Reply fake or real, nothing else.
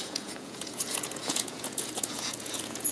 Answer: fake